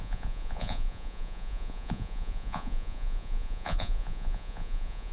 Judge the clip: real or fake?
fake